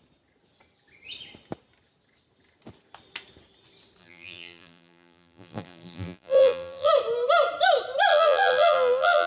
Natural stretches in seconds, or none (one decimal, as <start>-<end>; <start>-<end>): 0.0-4.0; 6.9-8.1